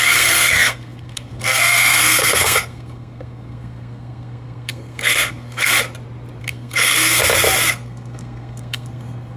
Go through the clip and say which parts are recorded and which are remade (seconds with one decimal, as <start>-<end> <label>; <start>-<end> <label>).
0.0-5.7 remade; 5.7-6.4 recorded; 6.4-7.2 remade; 7.2-7.7 recorded; 7.7-9.4 remade